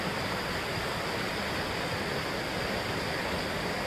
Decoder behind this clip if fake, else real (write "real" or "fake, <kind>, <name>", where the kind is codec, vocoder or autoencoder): real